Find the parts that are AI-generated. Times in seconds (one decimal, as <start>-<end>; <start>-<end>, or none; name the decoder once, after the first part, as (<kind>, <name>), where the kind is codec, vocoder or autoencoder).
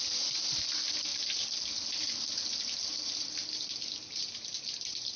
none